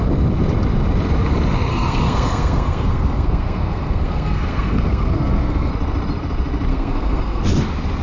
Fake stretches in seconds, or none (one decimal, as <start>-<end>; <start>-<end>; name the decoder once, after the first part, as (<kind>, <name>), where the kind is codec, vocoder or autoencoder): 1.7-5.7 (codec, SNAC); 6.7-7.4